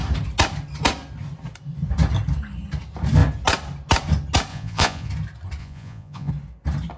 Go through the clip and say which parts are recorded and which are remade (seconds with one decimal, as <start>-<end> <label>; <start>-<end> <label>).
0.0-4.5 recorded; 4.5-5.1 remade; 5.1-5.6 recorded; 5.6-6.3 remade; 6.3-7.0 recorded